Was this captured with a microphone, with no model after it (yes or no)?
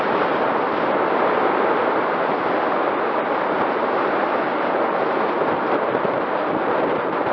yes